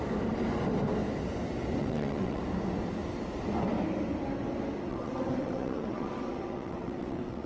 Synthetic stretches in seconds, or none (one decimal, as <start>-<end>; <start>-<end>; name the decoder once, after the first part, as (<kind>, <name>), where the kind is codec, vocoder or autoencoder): 1.8-2.4 (vocoder, WaveNeXt); 4.9-7.5

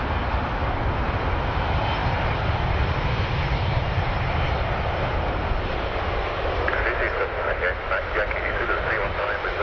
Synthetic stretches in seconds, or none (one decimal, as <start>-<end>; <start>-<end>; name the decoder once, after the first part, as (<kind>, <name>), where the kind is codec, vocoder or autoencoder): none

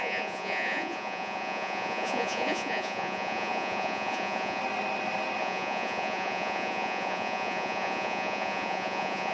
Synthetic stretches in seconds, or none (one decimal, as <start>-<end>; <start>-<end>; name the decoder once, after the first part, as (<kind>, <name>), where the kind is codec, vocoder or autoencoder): 0.0-4.6 (vocoder, Vocos); 5.4-9.3

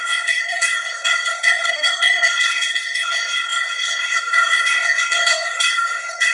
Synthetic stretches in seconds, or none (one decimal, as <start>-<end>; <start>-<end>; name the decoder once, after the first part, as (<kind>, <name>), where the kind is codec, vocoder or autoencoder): 0.0-6.3 (codec, SNAC)

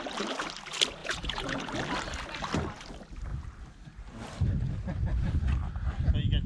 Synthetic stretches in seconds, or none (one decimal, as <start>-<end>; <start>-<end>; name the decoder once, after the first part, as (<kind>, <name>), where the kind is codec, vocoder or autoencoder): 1.0-1.7 (vocoder, Vocos)

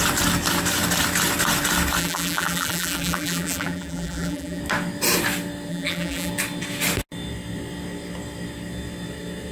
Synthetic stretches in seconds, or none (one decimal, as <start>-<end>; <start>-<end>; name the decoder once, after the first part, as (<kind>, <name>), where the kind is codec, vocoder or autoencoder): 2.0-4.6 (vocoder, BigVGAN v2); 5.7-6.3